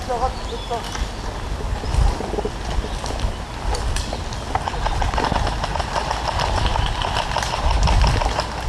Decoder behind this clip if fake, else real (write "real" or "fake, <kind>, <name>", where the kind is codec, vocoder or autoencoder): real